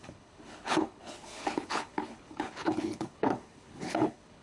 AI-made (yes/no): yes